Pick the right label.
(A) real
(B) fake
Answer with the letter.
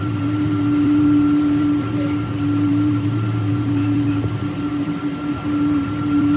B